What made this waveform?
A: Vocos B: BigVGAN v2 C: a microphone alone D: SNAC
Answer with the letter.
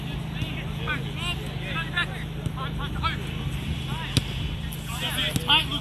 C